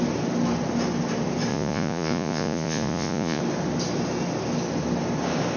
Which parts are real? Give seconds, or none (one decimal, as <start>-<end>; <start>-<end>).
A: 0.0-1.5; 3.4-5.6

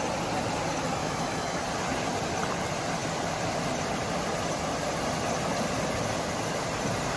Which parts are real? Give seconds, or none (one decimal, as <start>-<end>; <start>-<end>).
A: 0.0-1.0; 1.6-7.2